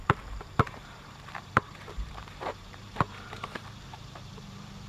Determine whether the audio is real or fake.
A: fake